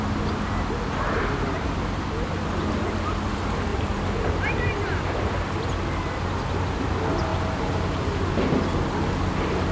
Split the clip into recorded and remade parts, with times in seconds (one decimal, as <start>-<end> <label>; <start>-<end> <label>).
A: 0.0-3.7 recorded; 3.7-5.2 remade; 5.2-9.7 recorded